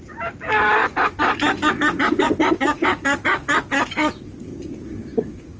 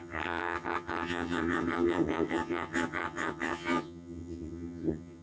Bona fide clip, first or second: first